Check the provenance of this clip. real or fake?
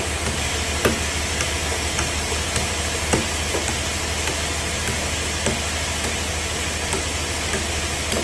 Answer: real